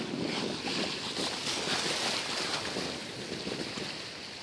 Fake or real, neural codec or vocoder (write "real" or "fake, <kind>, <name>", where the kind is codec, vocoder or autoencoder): real